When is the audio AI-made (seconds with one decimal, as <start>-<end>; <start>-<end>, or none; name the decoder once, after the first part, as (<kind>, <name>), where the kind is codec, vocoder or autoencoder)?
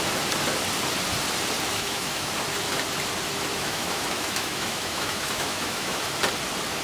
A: 1.7-2.3 (autoencoder, DAC-VAE); 3.5-6.2